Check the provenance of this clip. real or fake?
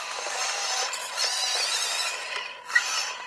real